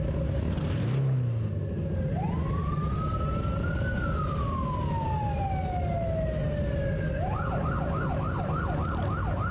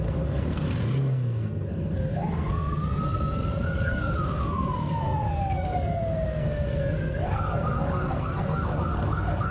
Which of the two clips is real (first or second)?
first